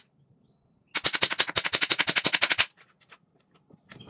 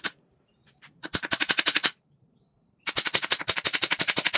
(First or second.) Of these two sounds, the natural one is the first